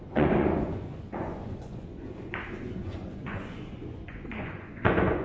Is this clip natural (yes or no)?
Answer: no